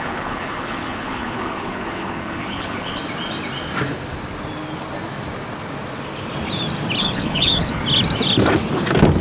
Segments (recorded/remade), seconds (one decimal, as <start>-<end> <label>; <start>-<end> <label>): 0.0-3.0 remade; 3.0-7.0 recorded; 7.0-7.8 remade; 7.8-9.2 recorded

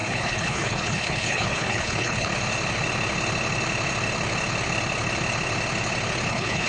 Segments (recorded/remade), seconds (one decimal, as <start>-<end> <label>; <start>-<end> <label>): 0.0-2.3 remade; 2.3-6.3 recorded; 6.3-6.7 remade

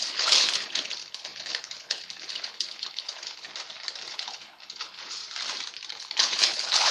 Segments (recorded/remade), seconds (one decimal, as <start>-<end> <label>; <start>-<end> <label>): 0.0-3.5 remade; 3.5-4.1 recorded; 4.1-5.2 remade; 5.2-5.9 recorded; 5.9-6.9 remade

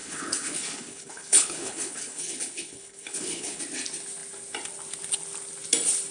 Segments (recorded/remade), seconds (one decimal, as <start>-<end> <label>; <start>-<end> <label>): 0.0-3.6 remade; 3.6-6.1 recorded

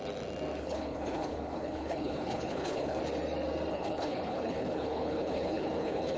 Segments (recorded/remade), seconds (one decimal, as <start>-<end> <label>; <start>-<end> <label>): 0.0-0.6 recorded; 0.6-3.0 remade; 3.0-3.7 recorded; 3.7-6.2 remade